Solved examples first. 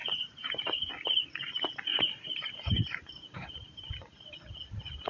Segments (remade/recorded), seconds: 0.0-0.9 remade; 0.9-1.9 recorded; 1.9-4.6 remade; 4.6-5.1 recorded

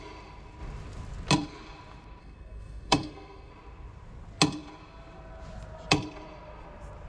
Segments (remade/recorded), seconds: 0.0-2.2 recorded; 2.2-3.5 remade; 3.5-7.1 recorded